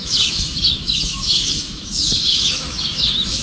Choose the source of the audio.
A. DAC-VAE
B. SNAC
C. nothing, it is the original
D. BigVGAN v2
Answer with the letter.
A